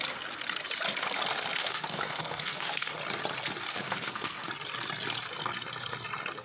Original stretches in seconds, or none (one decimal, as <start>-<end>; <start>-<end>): 0.0-1.6; 2.9-3.7; 4.5-6.4